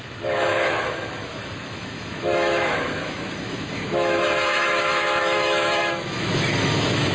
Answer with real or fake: fake